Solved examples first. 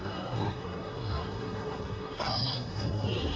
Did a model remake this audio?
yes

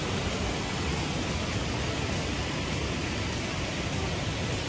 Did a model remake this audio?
no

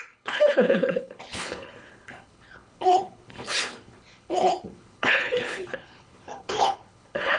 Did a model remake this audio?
yes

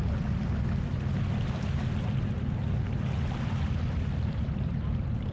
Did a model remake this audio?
no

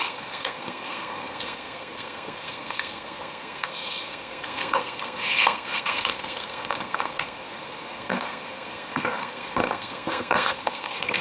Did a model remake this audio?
yes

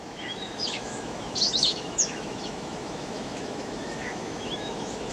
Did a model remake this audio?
yes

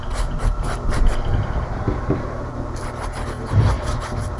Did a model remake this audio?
no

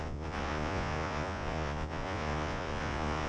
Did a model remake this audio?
yes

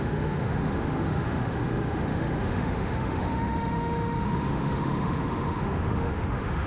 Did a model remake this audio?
yes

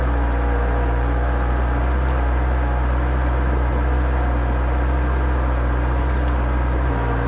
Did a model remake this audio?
no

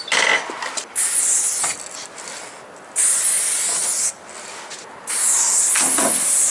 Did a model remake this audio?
no